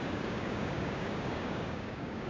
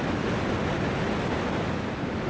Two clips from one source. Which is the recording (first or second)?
second